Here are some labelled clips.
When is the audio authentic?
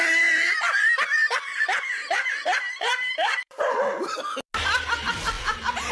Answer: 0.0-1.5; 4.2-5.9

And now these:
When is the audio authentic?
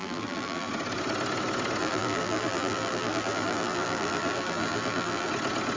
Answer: 0.7-1.8; 5.3-5.8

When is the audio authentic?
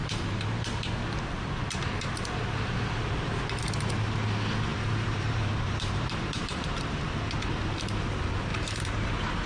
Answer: 0.9-4.7; 7.1-8.5; 9.1-9.5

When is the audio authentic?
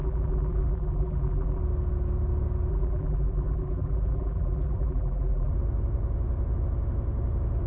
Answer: 1.6-2.7; 5.5-7.7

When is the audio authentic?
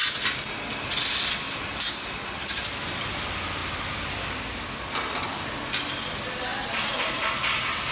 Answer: 0.0-7.9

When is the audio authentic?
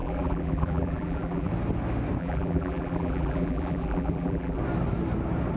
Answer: 1.5-2.2; 4.6-5.6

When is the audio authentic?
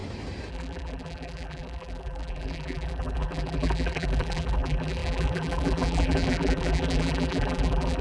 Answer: 0.0-0.5